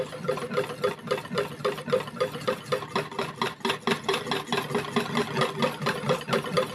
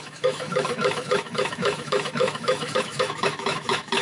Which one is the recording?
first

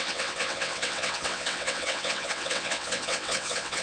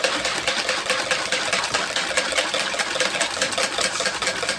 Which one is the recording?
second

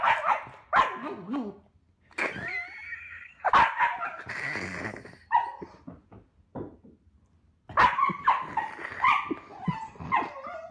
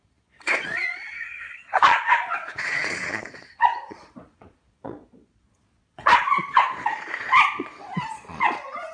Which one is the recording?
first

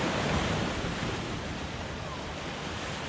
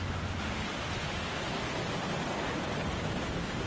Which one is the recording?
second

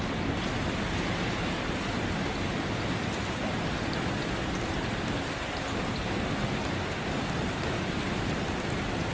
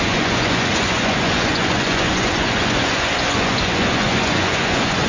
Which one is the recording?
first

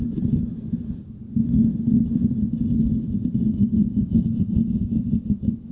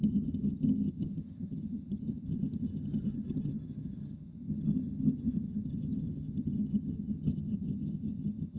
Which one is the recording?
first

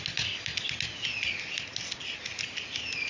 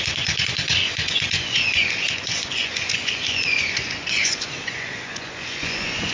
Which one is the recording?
first